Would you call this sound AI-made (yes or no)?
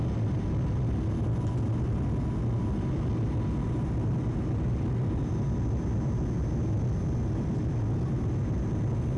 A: no